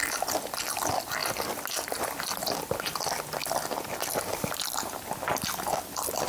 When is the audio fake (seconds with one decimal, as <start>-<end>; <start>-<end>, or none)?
none